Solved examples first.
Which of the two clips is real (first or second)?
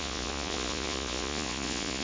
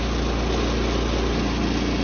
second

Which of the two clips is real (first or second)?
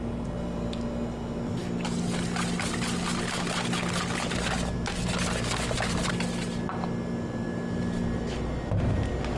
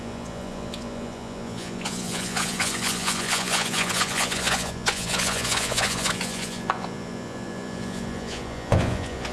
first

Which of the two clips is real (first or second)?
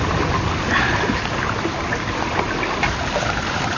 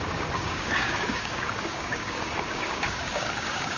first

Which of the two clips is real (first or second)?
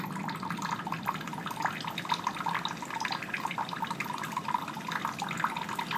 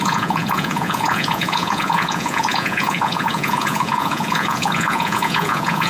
first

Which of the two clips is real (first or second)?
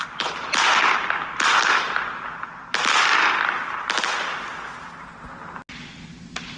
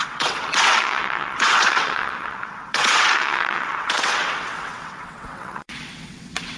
first